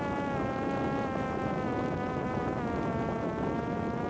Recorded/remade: recorded